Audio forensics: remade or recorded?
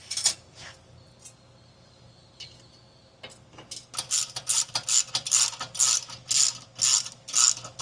recorded